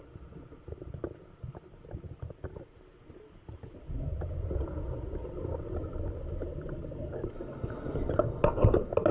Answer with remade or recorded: recorded